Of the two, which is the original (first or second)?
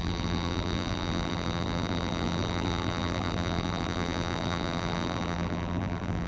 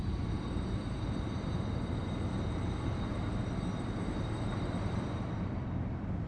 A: second